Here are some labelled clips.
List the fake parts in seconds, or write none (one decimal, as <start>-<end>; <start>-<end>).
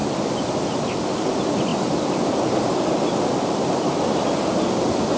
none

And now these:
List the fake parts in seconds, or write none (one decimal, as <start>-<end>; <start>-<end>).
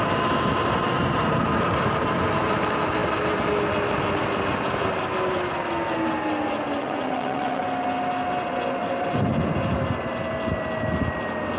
6.8-7.6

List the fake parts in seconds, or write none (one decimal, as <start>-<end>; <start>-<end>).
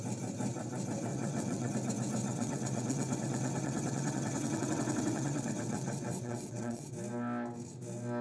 1.1-1.7; 2.2-6.9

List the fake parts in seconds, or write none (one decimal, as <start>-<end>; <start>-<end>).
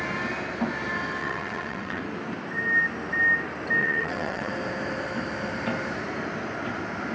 1.2-2.0; 3.8-4.5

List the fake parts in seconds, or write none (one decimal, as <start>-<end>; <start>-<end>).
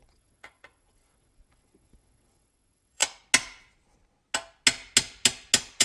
0.0-3.0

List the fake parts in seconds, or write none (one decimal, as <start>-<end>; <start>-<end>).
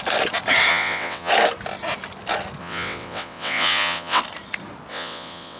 0.7-1.3; 2.6-4.2; 4.9-5.6